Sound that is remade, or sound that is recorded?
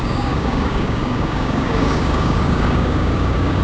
remade